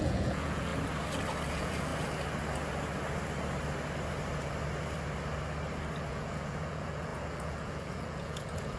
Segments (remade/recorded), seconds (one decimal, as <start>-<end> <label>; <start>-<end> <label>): 0.0-0.7 remade; 0.7-1.5 recorded; 1.5-1.9 remade; 1.9-6.1 recorded; 6.1-8.8 remade